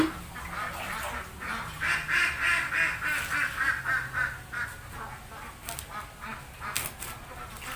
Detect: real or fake real